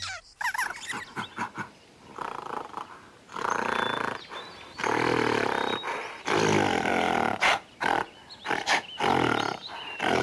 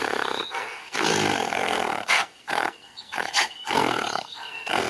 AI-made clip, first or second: second